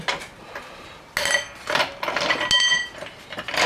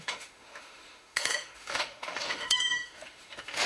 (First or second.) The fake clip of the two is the second